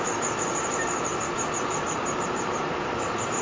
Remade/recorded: remade